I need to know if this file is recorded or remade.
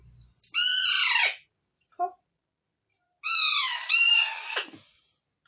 recorded